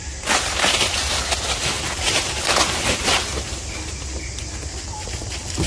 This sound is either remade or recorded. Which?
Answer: recorded